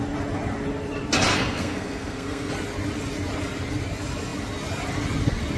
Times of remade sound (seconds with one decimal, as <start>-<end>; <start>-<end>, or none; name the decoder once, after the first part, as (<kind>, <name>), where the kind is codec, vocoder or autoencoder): 1.3-2.5 (codec, SNAC)